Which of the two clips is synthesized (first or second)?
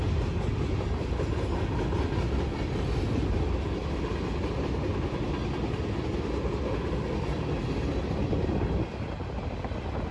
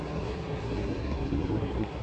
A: second